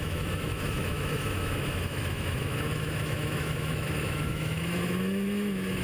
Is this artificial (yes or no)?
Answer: yes